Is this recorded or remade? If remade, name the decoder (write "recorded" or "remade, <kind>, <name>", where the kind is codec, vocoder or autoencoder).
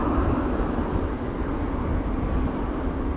recorded